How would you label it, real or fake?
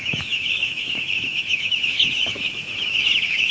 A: fake